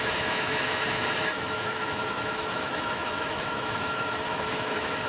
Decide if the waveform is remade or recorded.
remade